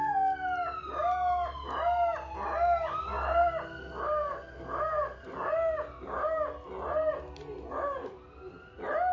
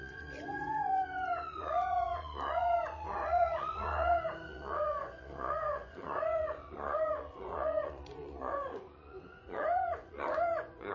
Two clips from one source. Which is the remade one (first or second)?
second